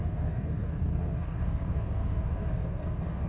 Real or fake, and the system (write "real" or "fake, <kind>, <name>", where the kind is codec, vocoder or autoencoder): fake, codec, DAC